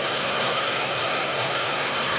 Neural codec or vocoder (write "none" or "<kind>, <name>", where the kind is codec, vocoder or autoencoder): codec, SNAC